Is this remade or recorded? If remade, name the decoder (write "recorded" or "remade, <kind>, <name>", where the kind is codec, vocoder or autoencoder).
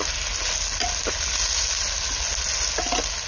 recorded